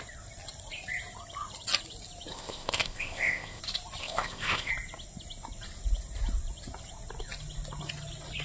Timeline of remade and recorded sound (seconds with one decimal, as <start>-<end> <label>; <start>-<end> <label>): 0.0-2.3 recorded; 2.3-3.6 remade; 3.6-4.0 recorded; 4.0-4.7 remade; 4.7-8.4 recorded